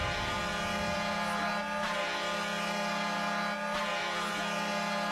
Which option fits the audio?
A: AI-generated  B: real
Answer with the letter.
B